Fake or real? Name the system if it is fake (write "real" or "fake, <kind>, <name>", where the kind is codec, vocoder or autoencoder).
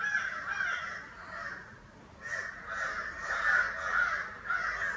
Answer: real